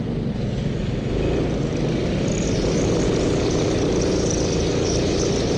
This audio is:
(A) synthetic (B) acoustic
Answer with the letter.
B